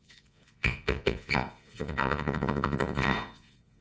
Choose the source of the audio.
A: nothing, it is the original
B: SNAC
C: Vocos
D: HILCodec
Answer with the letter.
C